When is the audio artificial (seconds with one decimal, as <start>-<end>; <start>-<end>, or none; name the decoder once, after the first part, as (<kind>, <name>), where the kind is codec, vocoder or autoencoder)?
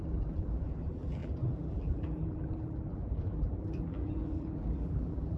0.0-5.4 (vocoder, BigVGAN v2)